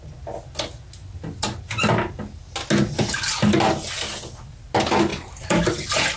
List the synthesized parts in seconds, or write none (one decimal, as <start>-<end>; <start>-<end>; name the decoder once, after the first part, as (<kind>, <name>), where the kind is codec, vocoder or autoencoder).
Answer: 5.1-5.6 (vocoder, BigVGAN v2)